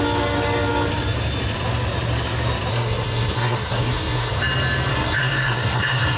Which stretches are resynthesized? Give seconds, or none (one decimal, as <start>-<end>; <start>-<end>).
2.7-4.4; 4.9-6.2